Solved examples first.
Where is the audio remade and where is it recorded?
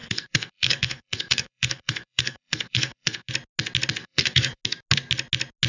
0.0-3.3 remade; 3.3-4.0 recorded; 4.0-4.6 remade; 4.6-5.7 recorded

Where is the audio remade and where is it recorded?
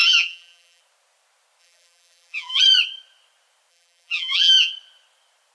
0.0-0.8 remade; 0.8-1.6 recorded; 1.6-2.6 remade; 2.6-3.7 recorded; 3.7-4.7 remade; 4.7-5.5 recorded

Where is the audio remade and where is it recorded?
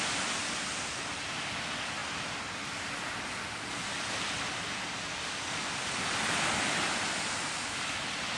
0.0-8.4 recorded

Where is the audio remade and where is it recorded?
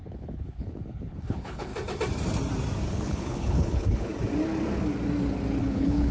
0.0-1.7 remade; 1.7-2.9 recorded; 2.9-4.1 remade; 4.1-5.6 recorded; 5.6-6.1 remade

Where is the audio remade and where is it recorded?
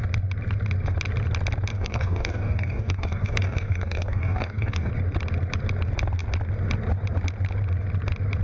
0.0-1.7 recorded; 1.7-4.9 remade; 4.9-8.4 recorded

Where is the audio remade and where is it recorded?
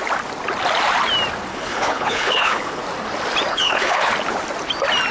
0.0-1.5 recorded; 1.5-2.8 remade; 2.8-3.5 recorded; 3.5-4.1 remade; 4.1-5.1 recorded